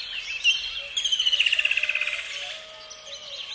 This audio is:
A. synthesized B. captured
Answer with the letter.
B